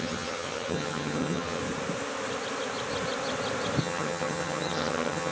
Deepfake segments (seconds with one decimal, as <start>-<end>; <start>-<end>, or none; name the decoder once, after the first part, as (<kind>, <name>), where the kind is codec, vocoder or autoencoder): 0.0-1.6 (vocoder, HiFi-GAN); 3.8-5.3